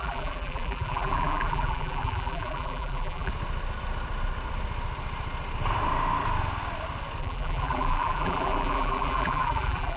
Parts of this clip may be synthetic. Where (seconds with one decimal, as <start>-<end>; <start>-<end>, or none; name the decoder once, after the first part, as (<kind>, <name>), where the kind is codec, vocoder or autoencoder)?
0.0-3.3 (vocoder, BigVGAN v2); 7.2-10.0